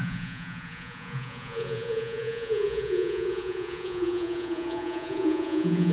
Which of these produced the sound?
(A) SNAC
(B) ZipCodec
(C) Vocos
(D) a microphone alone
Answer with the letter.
C